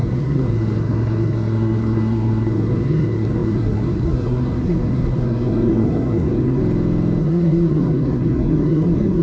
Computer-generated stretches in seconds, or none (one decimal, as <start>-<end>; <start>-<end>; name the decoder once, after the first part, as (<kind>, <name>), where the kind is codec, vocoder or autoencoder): 0.0-6.6 (codec, SNAC); 7.2-9.2